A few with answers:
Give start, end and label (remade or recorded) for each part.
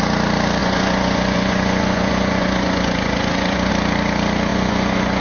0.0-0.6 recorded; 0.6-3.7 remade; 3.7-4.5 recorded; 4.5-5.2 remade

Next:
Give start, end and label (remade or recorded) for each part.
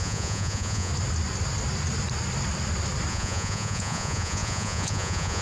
0.0-0.9 remade; 0.9-3.1 recorded; 3.1-5.4 remade